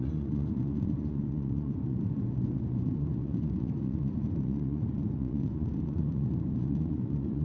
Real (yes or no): no